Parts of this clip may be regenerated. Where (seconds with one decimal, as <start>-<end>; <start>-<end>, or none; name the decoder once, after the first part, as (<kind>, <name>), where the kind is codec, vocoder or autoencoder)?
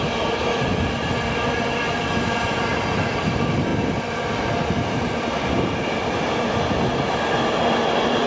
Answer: none